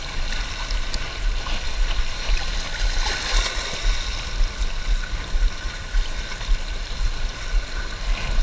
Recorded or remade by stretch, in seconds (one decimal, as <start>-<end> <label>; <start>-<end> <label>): 0.0-8.4 recorded